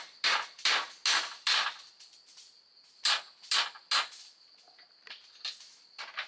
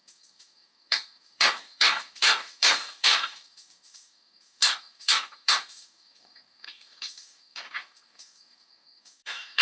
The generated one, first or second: second